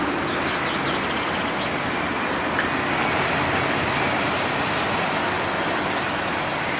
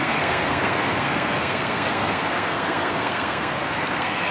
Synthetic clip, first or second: second